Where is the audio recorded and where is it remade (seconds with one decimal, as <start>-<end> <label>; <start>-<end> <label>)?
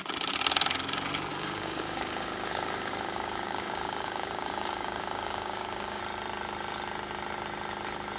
0.0-1.3 recorded; 1.3-6.0 remade; 6.0-8.2 recorded